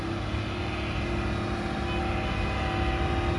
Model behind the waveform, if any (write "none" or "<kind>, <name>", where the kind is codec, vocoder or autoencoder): none